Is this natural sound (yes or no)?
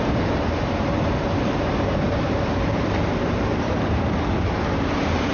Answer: no